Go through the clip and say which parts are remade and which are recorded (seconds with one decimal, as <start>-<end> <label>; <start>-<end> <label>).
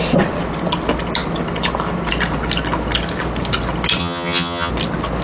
0.0-4.0 recorded; 4.0-4.7 remade; 4.7-5.2 recorded